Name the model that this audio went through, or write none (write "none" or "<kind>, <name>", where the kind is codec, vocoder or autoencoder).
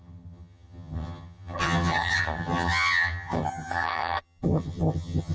vocoder, HiFi-GAN